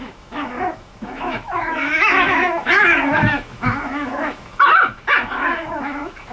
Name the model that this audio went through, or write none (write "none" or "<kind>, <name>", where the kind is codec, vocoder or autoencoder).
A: autoencoder, DAC-VAE